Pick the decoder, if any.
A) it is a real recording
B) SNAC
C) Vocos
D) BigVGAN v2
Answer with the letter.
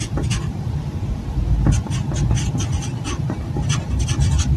A